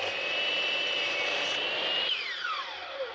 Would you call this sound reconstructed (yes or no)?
yes